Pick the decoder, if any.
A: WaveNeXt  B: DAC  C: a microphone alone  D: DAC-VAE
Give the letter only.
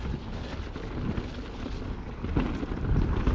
C